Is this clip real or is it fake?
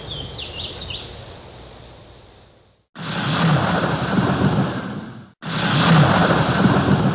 real